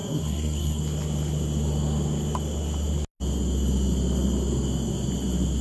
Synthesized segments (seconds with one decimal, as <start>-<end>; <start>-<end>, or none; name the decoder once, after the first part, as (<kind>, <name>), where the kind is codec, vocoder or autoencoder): 0.0-0.8 (codec, SNAC)